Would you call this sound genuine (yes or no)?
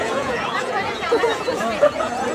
no